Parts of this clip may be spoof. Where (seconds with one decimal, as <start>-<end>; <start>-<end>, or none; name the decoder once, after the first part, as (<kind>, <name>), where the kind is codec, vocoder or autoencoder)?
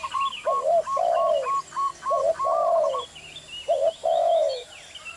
4.0-4.7 (autoencoder, DAC-VAE)